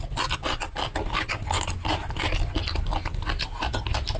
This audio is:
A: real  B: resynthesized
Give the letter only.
A